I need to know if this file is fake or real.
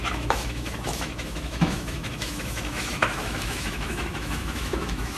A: fake